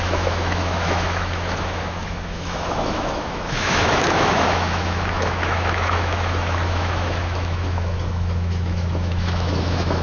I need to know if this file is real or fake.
fake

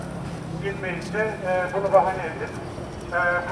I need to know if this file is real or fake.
real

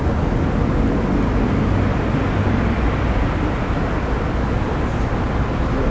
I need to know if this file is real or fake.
real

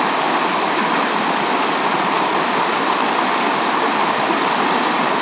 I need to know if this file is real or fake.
real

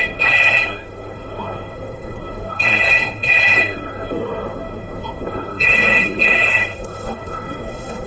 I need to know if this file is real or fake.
fake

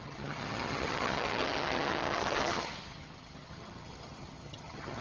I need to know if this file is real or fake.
fake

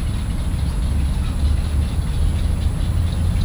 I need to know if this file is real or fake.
real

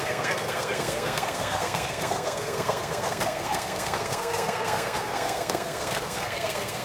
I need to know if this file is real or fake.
fake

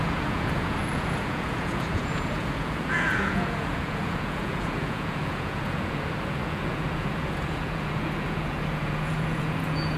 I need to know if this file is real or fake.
fake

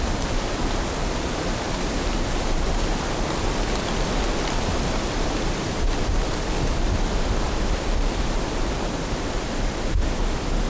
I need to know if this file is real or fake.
fake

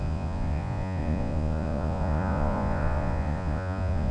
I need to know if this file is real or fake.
fake